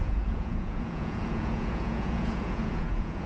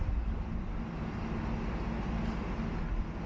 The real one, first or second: second